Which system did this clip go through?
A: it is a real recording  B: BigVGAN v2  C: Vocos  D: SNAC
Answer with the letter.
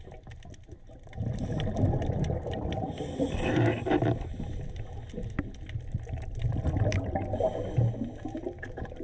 A